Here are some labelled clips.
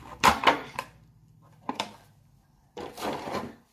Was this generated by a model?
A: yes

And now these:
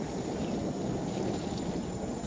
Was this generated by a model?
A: no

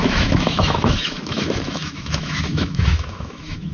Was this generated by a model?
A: yes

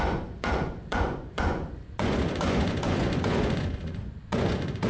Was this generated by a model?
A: yes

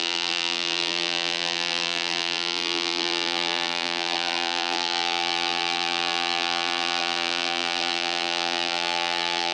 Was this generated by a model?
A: yes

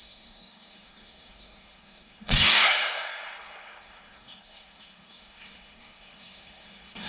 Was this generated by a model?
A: yes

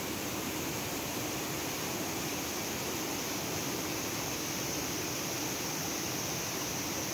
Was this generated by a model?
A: yes